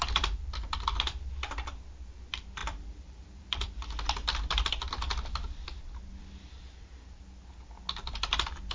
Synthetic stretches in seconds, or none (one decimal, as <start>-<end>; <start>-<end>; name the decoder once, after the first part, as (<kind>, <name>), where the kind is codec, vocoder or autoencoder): 2.6-7.2 (vocoder, BigVGAN v2)